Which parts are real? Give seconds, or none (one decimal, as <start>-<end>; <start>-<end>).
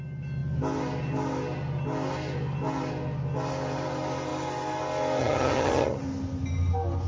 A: 0.0-5.2; 6.0-7.1